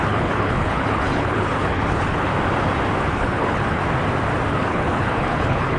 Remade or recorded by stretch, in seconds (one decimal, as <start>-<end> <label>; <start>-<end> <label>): 0.0-2.3 remade; 2.3-3.1 recorded; 3.1-3.8 remade; 3.8-4.5 recorded; 4.5-5.8 remade